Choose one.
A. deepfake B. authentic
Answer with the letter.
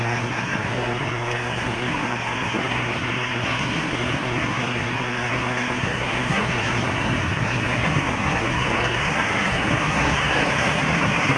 A